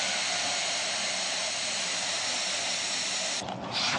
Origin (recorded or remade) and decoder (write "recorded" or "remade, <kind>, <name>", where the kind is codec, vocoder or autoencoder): recorded